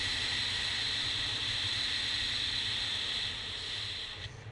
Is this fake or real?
real